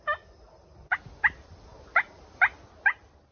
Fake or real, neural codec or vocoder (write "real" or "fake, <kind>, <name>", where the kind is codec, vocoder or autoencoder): real